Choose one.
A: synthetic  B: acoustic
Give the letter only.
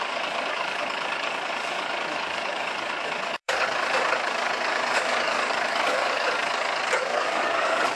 A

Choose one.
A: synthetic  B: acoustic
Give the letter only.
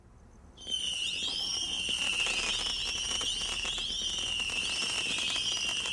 B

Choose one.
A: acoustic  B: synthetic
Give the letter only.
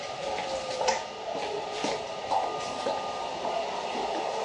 A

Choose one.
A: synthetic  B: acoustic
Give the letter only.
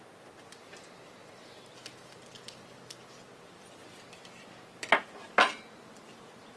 B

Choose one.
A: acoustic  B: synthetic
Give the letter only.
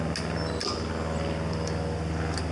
A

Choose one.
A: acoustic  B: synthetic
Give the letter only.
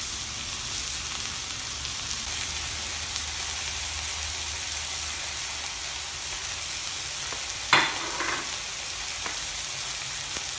A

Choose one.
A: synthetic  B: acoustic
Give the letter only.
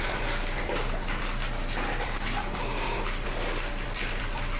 A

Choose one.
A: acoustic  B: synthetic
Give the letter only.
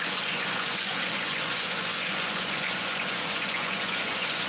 B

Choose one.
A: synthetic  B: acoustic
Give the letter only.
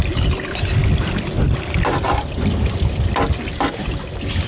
B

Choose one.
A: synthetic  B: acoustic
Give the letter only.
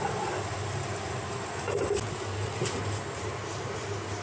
B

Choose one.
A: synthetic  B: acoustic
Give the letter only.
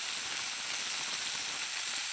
B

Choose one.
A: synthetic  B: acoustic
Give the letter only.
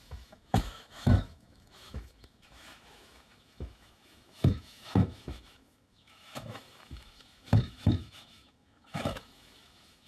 A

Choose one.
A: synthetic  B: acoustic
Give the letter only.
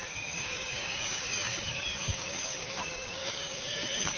A